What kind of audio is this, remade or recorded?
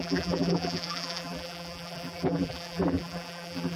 remade